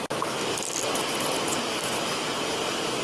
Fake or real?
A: real